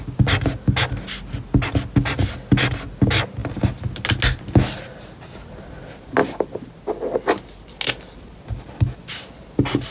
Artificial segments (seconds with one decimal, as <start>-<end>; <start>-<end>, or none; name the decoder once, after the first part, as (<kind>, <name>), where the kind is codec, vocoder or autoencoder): none

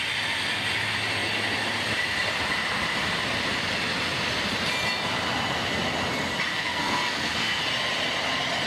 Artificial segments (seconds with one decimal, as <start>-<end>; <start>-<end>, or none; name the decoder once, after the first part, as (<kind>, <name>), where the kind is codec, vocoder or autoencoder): 6.5-7.6 (codec, SNAC)

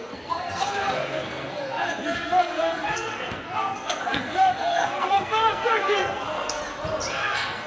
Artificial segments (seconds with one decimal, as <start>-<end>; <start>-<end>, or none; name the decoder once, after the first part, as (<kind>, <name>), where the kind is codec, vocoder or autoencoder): 0.0-6.6 (codec, SNAC); 7.1-7.7